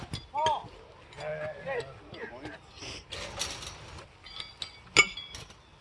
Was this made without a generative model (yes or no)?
yes